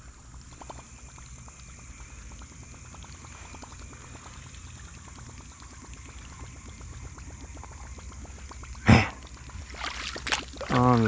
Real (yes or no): yes